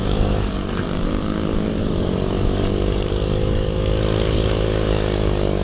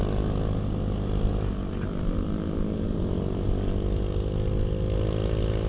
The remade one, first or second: first